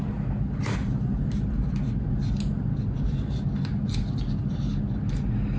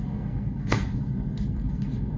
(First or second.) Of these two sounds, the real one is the first